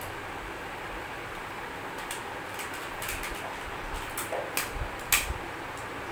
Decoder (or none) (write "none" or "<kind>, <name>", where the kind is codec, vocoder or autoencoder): none